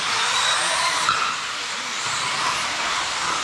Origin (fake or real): real